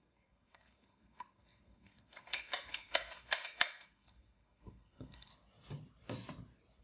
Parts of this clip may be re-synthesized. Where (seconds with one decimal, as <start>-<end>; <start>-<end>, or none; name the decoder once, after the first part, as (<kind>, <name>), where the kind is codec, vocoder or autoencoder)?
0.0-5.3 (codec, SNAC)